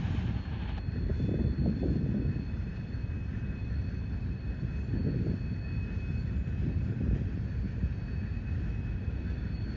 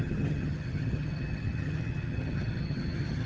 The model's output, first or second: second